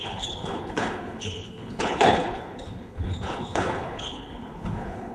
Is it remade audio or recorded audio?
remade